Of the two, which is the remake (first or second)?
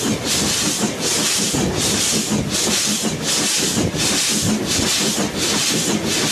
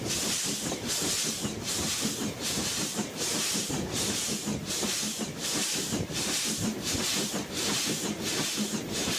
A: second